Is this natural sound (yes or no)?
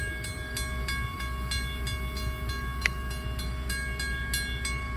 yes